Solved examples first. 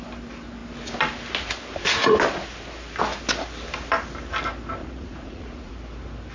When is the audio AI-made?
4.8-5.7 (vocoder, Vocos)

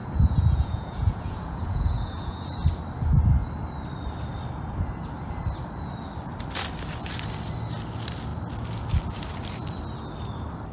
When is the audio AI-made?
0.0-2.4 (vocoder, Vocos)

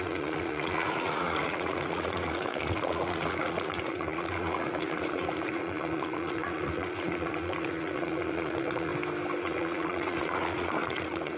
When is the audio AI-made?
0.0-8.9 (vocoder, Vocos); 9.4-11.4

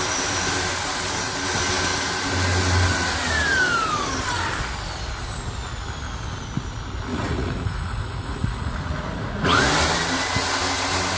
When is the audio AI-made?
7.1-9.6 (vocoder, Vocos)

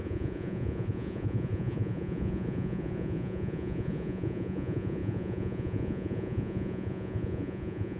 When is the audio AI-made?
0.0-8.0 (vocoder, Vocos)